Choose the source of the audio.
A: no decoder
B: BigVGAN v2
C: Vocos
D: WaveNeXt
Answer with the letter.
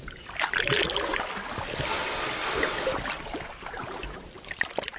A